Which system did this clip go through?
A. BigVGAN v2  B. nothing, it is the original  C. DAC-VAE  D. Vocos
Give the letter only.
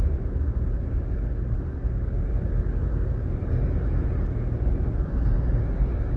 B